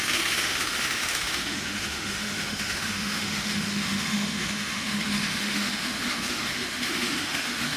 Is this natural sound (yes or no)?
no